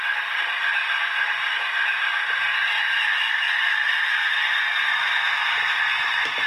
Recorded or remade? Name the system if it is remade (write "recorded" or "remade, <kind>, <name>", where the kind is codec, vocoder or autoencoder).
recorded